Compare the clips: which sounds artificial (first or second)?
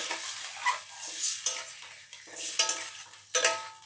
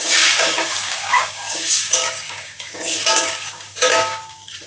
second